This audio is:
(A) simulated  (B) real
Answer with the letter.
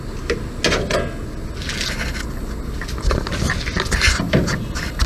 B